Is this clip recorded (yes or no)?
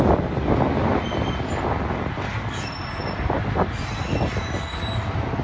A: yes